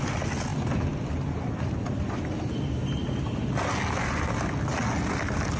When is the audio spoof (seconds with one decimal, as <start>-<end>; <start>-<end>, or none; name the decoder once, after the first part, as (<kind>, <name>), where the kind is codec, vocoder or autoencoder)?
none